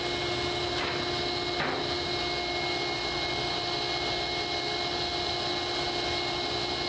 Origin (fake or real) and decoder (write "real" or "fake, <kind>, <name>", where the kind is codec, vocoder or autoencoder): real